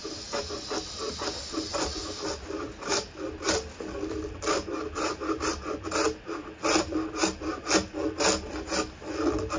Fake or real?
real